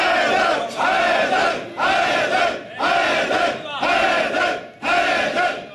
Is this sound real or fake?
real